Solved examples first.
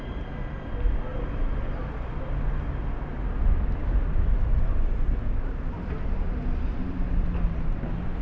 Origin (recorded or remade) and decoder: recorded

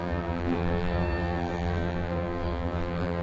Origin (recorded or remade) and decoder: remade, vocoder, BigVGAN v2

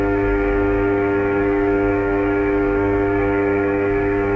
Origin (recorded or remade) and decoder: remade, codec, SNAC